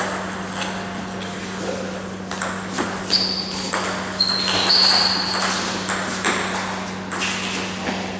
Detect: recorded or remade recorded